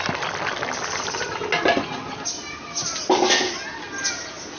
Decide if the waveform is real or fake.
real